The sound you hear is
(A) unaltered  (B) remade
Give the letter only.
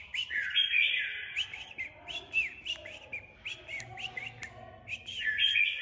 A